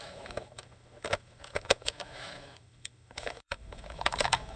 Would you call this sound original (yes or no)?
no